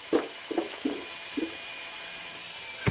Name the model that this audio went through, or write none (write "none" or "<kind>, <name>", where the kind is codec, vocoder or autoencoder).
none